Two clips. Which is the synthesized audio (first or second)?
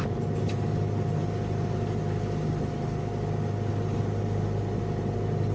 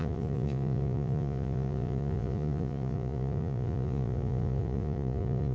second